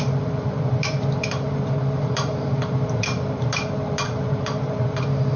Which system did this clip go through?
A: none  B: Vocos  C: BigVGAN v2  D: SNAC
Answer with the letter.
C